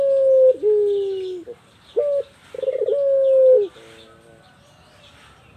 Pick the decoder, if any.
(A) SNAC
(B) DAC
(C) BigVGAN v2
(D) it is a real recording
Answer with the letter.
D